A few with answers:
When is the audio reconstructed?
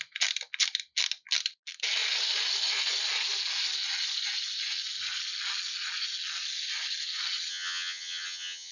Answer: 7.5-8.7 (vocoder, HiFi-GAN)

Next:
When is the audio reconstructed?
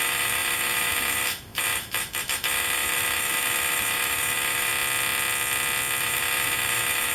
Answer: 0.0-4.7 (autoencoder, DAC-VAE); 6.0-7.1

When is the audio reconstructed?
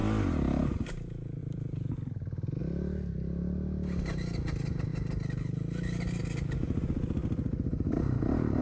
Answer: 1.4-2.6 (vocoder, BigVGAN v2)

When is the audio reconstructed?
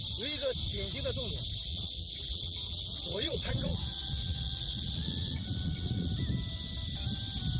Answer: 1.6-6.1 (vocoder, Vocos)